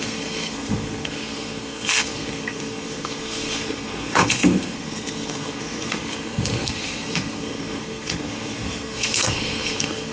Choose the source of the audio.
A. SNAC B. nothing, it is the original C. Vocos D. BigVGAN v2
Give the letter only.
A